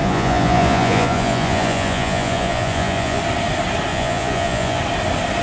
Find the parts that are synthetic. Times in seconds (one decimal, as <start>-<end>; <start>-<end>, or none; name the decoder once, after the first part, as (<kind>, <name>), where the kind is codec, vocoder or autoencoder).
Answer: 0.0-3.2 (vocoder, Vocos); 3.9-4.8